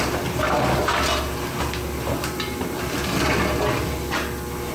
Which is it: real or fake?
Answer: real